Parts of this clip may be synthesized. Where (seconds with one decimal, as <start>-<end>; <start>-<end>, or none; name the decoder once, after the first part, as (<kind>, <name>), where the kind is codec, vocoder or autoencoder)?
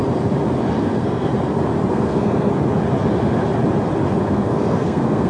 0.8-1.3 (codec, SNAC); 1.9-2.5; 4.2-5.3